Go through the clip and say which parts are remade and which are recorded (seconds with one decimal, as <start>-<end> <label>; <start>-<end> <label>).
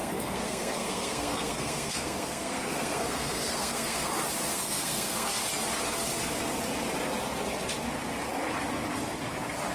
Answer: 0.0-4.1 remade; 4.1-4.5 recorded; 4.5-5.4 remade; 5.4-9.7 recorded